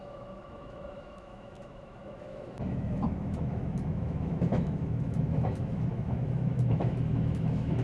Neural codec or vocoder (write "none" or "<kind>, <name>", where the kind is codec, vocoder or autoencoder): autoencoder, DAC-VAE